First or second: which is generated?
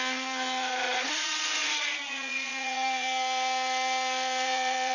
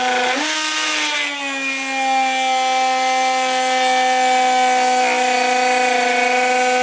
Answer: first